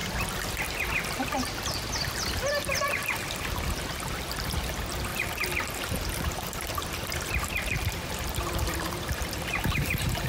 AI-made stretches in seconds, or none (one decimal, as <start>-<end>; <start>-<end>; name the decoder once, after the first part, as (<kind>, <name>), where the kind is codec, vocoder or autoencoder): 5.1-10.3 (vocoder, BigVGAN v2)